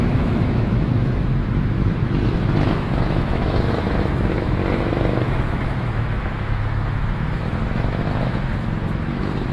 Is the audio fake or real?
fake